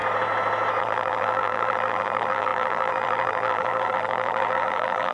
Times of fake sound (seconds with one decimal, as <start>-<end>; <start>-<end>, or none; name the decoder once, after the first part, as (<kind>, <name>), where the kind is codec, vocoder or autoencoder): 0.8-5.1 (vocoder, BigVGAN v2)